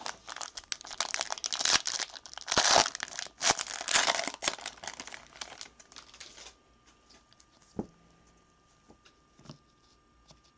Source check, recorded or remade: recorded